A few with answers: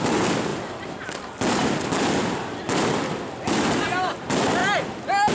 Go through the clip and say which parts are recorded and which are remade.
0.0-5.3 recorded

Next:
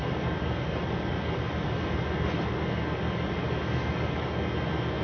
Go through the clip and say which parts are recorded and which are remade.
0.0-3.0 remade; 3.0-5.0 recorded

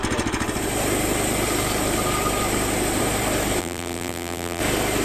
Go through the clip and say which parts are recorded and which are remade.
0.0-3.6 recorded; 3.6-4.6 remade; 4.6-5.0 recorded

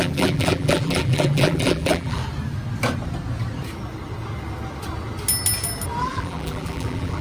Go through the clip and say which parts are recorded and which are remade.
0.0-2.2 remade; 2.2-6.0 recorded; 6.0-7.2 remade

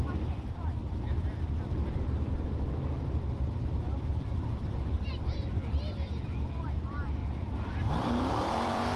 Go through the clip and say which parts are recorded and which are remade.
0.0-0.8 remade; 0.8-4.7 recorded; 4.7-9.0 remade

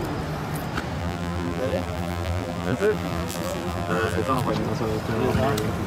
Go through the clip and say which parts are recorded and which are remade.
0.0-1.0 recorded; 1.0-4.5 remade; 4.5-5.9 recorded